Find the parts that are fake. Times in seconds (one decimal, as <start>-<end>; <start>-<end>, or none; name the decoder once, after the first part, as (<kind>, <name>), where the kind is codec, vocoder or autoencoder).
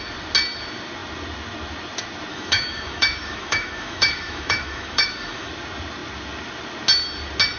2.3-5.5 (autoencoder, DAC-VAE)